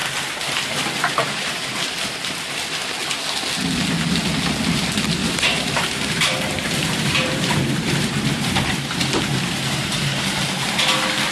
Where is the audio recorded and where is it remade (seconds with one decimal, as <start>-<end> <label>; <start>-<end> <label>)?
0.0-2.5 remade; 2.5-5.2 recorded; 5.2-10.2 remade; 10.2-11.3 recorded